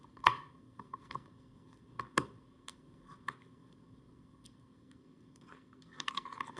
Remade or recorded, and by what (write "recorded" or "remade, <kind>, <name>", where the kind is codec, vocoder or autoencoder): remade, codec, SNAC